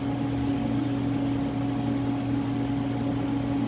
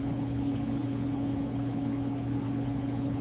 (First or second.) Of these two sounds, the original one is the first